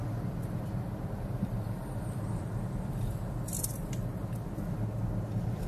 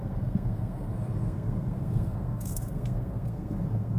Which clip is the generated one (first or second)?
second